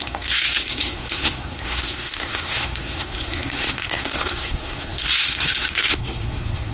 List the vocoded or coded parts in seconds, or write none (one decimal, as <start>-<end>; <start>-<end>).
0.0-6.7